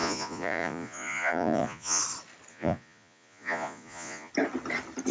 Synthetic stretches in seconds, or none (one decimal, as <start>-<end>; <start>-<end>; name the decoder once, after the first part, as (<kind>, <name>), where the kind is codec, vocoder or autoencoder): 0.0-2.0 (vocoder, Vocos); 2.5-4.3